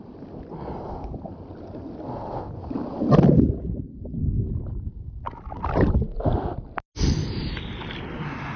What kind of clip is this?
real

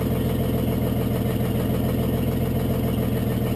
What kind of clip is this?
real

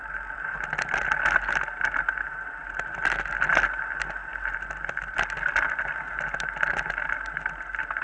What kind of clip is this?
real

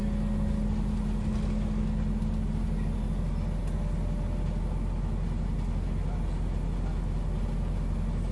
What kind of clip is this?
real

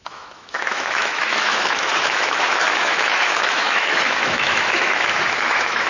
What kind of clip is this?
fake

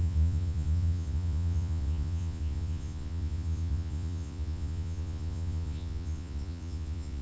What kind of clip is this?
fake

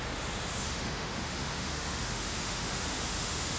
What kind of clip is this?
fake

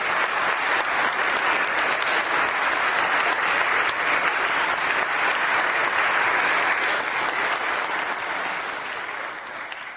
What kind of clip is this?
real